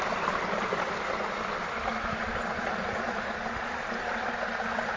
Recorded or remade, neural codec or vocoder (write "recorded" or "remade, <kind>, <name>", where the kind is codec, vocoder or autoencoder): recorded